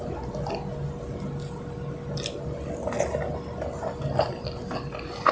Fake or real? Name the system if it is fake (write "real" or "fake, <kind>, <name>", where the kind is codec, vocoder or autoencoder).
real